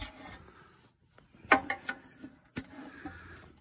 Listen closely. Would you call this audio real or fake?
real